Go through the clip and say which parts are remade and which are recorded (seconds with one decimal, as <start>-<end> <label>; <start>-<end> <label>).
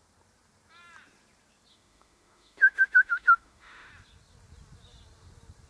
0.0-1.7 recorded; 1.7-3.9 remade; 3.9-5.7 recorded